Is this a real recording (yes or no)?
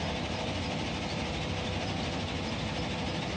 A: yes